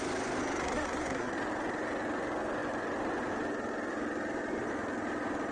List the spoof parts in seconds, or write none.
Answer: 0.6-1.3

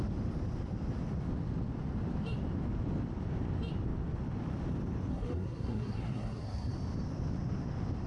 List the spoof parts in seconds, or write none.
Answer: 5.1-6.7

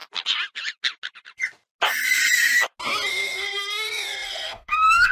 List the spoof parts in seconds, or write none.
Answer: 3.1-5.1